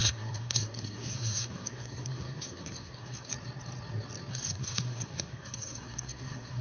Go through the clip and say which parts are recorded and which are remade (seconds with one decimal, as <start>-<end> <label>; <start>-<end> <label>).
0.0-3.3 remade; 3.3-4.3 recorded; 4.3-6.6 remade